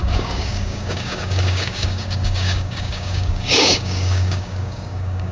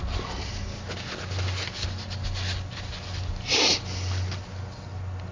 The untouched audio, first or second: second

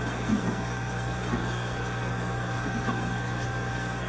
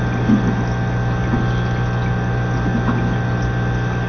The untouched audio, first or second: second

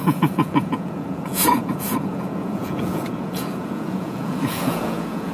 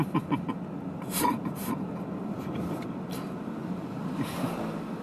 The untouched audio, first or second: second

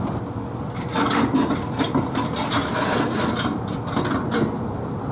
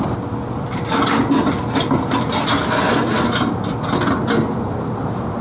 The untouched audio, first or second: second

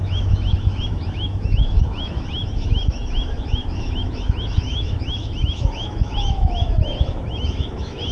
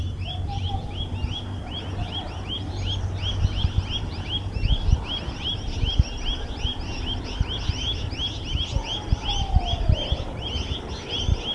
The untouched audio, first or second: second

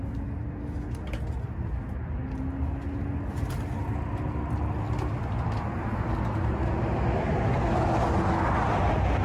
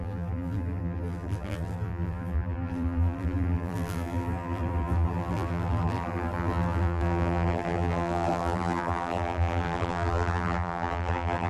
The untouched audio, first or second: first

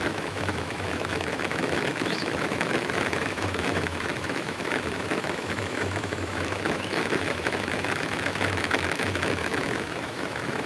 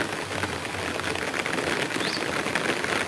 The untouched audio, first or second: second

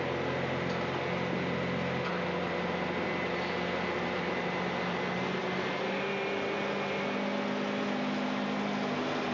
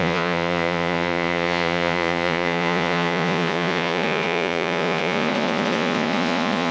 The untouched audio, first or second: first